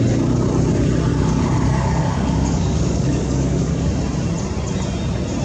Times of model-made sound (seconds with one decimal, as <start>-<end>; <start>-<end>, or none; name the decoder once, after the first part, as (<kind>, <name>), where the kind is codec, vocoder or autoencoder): 1.1-3.9 (codec, DAC)